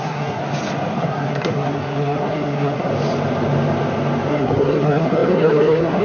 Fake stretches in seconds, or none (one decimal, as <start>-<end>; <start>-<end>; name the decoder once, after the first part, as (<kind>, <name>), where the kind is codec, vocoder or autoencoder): 0.0-0.4 (codec, SNAC); 1.0-2.9; 4.3-6.0